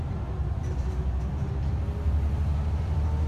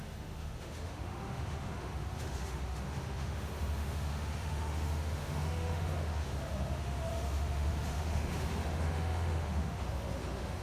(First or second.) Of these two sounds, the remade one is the second